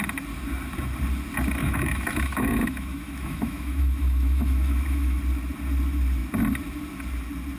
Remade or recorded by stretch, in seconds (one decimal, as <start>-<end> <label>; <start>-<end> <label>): 0.0-1.6 recorded; 1.6-5.2 remade; 5.2-7.6 recorded